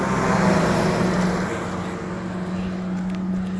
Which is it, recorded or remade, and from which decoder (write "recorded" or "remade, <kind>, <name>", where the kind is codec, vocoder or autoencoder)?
recorded